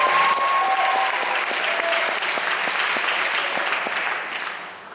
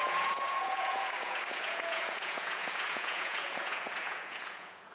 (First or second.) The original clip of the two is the first